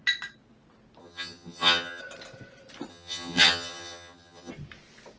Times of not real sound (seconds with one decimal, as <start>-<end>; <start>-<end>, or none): 1.0-2.0; 2.9-4.5